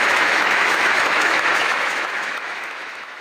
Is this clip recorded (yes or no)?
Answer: no